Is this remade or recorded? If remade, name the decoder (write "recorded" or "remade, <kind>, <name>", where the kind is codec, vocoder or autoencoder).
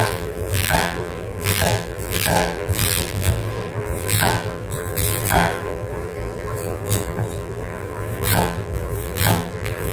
remade, vocoder, BigVGAN v2